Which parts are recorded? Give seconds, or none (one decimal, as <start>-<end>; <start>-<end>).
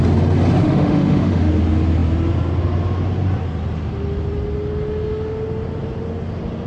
0.0-0.6; 1.5-6.7